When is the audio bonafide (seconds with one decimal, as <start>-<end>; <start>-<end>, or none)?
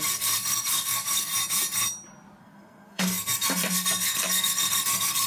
1.3-2.4